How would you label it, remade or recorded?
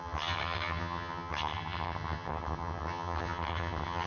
remade